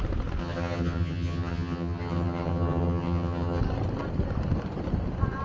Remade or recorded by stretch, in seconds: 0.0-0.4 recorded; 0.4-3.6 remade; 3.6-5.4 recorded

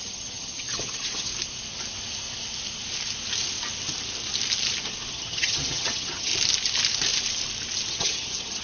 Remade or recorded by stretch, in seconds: 0.0-1.3 remade; 1.3-5.1 recorded; 5.1-6.3 remade; 6.3-7.9 recorded; 7.9-8.6 remade